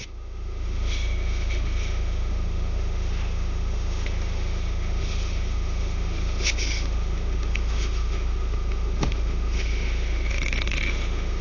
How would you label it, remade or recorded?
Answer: remade